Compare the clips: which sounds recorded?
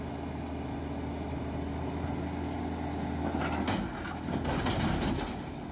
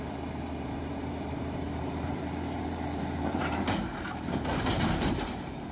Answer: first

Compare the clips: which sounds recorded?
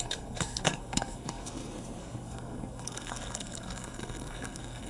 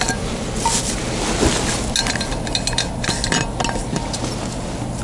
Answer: second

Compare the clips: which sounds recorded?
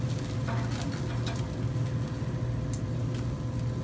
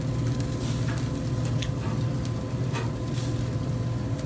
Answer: first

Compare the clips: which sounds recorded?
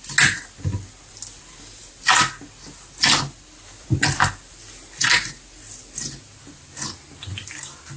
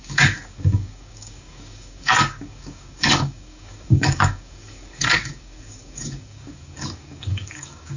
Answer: first